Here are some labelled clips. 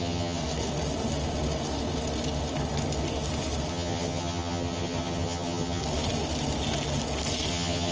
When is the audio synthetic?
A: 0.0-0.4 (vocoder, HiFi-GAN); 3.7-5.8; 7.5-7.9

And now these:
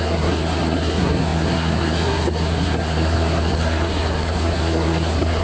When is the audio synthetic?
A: 0.0-5.4 (codec, SNAC)

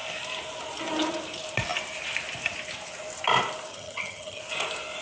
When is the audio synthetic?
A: 3.7-4.4 (vocoder, HiFi-GAN)

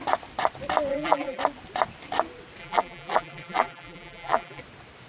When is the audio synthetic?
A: 0.9-1.4 (vocoder, BigVGAN v2); 2.6-4.6

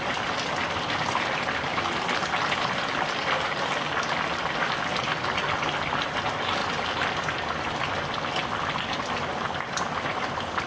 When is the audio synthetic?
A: none

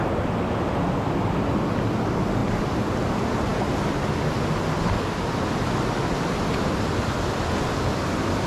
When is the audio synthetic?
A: none

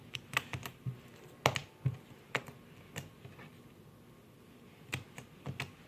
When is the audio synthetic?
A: none

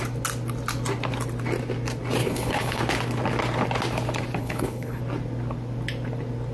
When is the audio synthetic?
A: 2.2-2.8 (codec, HILCodec); 4.4-5.0